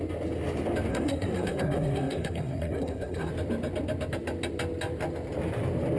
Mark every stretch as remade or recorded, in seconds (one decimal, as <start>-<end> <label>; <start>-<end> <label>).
0.0-0.9 recorded; 0.9-3.3 remade; 3.3-6.0 recorded